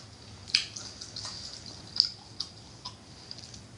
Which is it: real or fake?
real